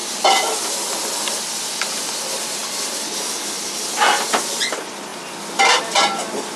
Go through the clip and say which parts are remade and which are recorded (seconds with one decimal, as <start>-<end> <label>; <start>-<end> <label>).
0.0-6.6 recorded